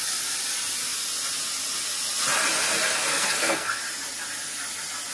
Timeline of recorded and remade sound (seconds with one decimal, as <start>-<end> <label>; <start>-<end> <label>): 0.0-3.1 recorded; 3.1-3.8 remade; 3.8-5.1 recorded